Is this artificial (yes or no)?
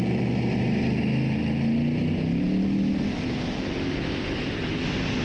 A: no